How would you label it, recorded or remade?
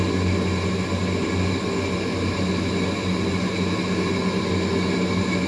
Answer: recorded